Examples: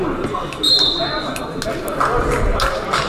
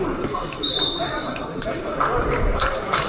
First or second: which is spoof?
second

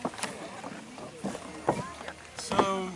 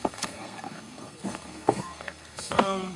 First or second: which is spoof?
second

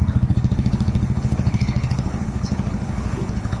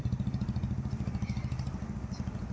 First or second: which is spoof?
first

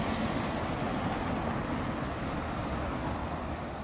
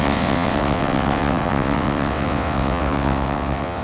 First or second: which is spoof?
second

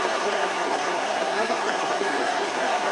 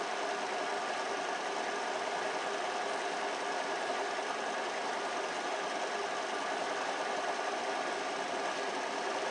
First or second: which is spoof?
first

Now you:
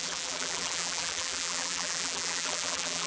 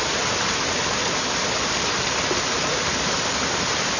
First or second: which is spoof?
first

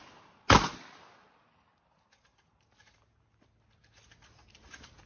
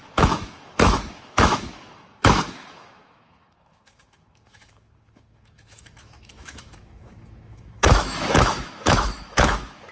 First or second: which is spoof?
second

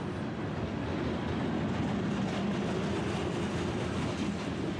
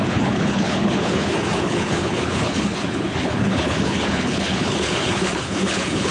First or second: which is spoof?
second